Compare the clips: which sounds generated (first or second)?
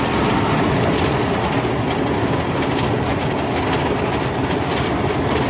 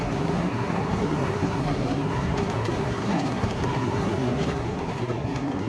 second